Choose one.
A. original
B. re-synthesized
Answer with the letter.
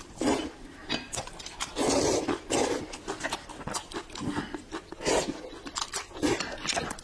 A